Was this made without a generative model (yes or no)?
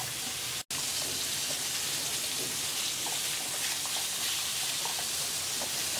yes